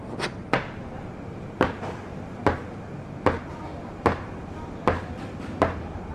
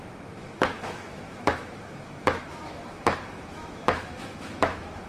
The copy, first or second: second